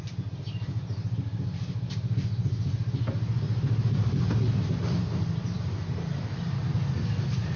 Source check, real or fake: real